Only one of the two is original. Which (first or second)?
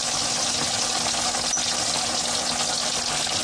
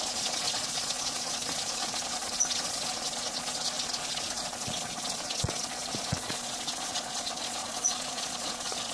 first